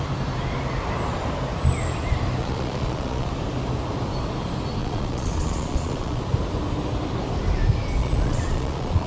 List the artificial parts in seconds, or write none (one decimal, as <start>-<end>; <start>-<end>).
2.4-3.3; 4.8-6.2; 8.0-9.1